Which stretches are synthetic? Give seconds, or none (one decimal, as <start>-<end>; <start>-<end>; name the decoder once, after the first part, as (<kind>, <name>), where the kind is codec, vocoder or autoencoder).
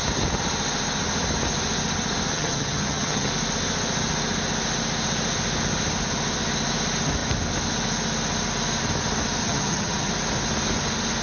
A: 2.3-3.3 (vocoder, HiFi-GAN); 9.4-10.1